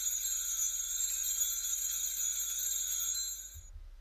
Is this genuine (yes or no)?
yes